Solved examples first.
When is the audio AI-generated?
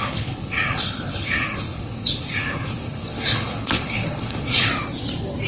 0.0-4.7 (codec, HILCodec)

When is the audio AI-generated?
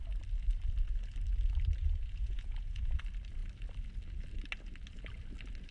1.8-3.0 (vocoder, Vocos)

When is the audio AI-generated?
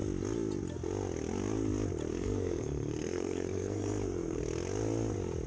2.1-4.4 (codec, SNAC)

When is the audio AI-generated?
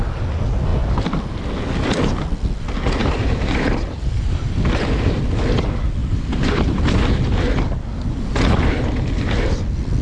3.0-5.2 (vocoder, BigVGAN v2); 6.0-6.9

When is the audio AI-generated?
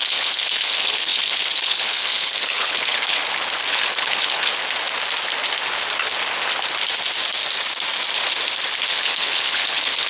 0.0-3.2 (codec, HILCodec); 3.7-4.5; 8.9-10.1